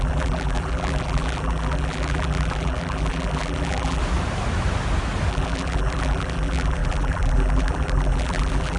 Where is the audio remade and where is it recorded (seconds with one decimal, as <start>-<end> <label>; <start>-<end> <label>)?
0.0-4.0 remade; 4.0-5.3 recorded; 5.3-8.8 remade